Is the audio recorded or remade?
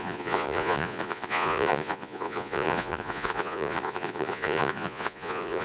remade